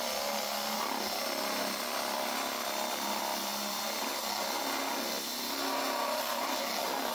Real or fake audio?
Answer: real